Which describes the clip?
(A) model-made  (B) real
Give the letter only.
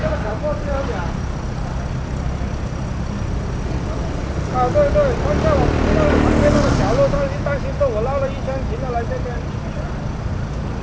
B